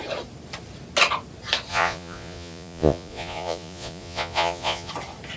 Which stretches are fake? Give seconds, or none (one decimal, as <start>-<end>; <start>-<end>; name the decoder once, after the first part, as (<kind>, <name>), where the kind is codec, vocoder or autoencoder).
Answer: 1.7-4.9 (vocoder, Vocos)